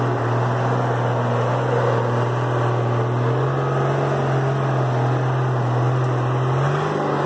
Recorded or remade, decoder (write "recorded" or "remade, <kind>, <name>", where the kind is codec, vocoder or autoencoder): recorded